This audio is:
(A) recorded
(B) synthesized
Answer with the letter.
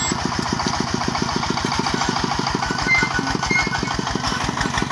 A